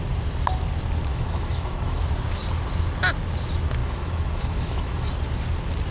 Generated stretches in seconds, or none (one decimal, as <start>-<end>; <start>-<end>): 1.1-2.0; 3.8-5.1